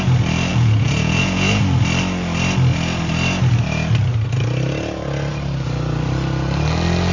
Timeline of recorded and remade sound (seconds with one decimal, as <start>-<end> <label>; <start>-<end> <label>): 0.0-0.5 recorded; 0.5-1.6 remade; 1.6-7.1 recorded